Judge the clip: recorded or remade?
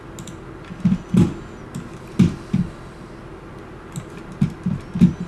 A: recorded